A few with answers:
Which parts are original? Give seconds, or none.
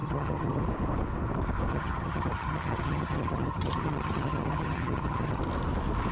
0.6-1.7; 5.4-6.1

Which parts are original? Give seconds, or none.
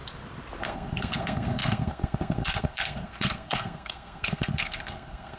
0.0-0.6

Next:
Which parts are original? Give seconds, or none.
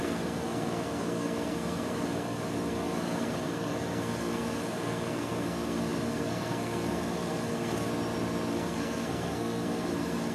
7.9-8.5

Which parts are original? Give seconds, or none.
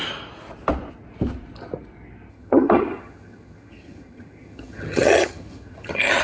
0.0-2.3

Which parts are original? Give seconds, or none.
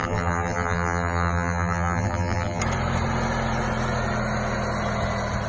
2.6-5.5